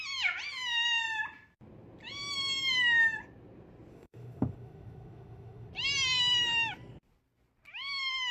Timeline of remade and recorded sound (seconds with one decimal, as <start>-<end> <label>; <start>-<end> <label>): 0.0-3.9 recorded; 3.9-5.7 remade; 5.7-8.3 recorded

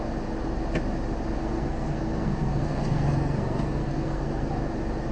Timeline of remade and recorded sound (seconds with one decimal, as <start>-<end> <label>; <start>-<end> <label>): 0.0-1.4 recorded; 1.4-4.5 remade; 4.5-5.1 recorded

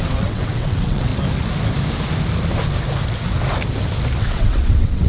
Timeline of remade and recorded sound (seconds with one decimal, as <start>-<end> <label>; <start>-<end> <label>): 0.0-1.1 remade; 1.1-4.2 recorded; 4.2-5.1 remade

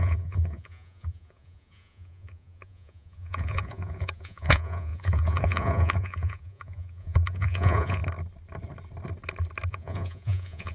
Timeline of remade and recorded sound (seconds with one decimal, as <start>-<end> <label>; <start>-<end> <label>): 0.0-8.0 remade; 8.0-9.7 recorded; 9.7-10.7 remade

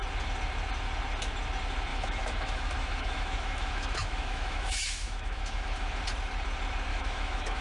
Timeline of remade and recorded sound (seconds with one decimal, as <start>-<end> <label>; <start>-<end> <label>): 0.0-1.9 recorded; 1.9-6.0 remade; 6.0-6.9 recorded; 6.9-7.6 remade

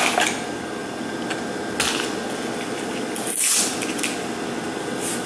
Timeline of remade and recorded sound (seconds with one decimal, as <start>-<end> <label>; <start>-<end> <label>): 0.0-5.3 recorded